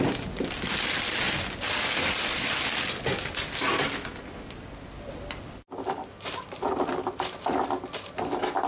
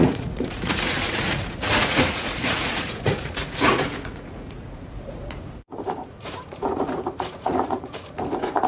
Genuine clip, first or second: first